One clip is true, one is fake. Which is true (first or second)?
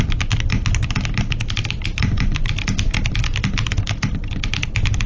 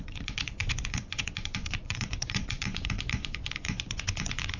first